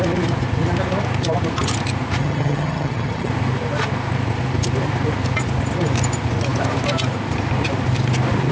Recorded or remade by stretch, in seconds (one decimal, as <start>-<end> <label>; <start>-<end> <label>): 0.0-2.2 recorded; 2.2-3.3 remade; 3.3-8.5 recorded